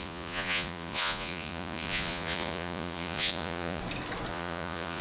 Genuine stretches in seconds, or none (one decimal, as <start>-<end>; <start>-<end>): 3.8-4.3